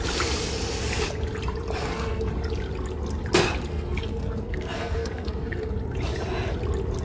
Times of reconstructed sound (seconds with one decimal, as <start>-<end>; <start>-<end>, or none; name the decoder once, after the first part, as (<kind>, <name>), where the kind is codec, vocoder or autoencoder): 1.8-2.3 (codec, SNAC); 3.7-5.7